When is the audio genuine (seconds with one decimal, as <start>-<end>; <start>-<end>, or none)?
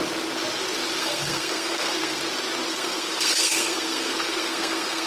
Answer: 0.0-1.0; 2.2-2.7